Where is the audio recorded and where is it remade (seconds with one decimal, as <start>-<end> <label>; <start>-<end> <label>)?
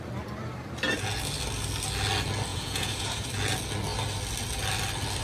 0.0-2.5 recorded; 2.5-3.3 remade; 3.3-5.2 recorded